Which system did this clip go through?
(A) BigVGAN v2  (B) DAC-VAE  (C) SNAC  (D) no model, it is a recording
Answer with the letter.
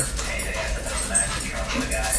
D